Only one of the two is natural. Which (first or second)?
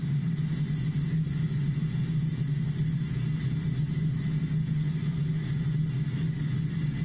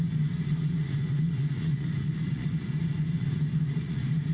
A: first